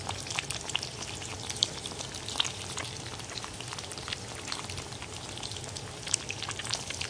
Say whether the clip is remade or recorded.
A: recorded